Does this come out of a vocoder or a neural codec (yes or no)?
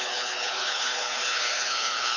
yes